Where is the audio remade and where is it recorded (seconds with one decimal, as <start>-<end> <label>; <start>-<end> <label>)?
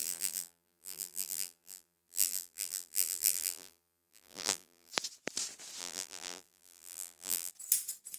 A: 0.0-4.9 remade; 4.9-5.8 recorded; 5.8-7.5 remade; 7.5-8.2 recorded